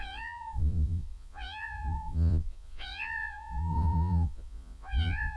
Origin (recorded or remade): remade